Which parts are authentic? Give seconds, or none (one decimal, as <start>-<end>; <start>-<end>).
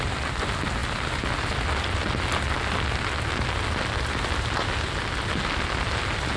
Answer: 0.0-6.4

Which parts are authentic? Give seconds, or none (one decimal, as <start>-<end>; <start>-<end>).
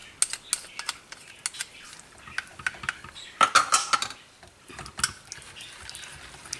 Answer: 0.0-6.6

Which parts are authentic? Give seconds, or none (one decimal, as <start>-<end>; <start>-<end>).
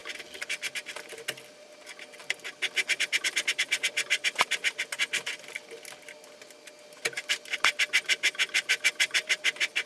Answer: 0.0-9.9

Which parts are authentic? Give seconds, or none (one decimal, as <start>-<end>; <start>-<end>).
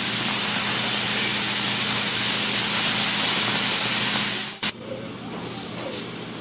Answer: 0.0-6.4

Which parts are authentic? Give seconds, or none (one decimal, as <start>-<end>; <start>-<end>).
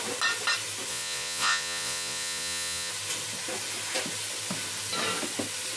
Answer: 0.0-0.9; 2.9-5.8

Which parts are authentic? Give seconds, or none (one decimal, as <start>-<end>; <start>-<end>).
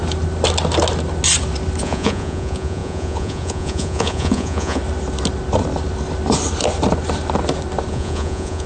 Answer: 0.0-1.8; 4.8-7.9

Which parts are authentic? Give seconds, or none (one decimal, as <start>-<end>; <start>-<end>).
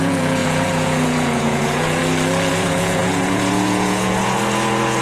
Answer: 2.0-2.5